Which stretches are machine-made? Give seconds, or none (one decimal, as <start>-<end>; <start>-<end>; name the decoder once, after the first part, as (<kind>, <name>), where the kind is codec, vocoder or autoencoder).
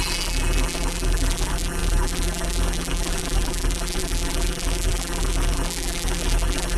0.0-6.8 (vocoder, BigVGAN v2)